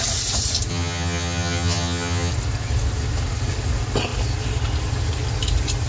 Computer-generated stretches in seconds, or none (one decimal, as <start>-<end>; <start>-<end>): 0.7-2.3